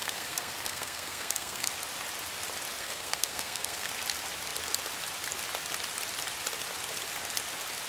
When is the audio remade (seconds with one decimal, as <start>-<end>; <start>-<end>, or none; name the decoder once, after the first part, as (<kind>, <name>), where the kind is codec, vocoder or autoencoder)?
0.0-1.7 (codec, SNAC); 2.8-3.9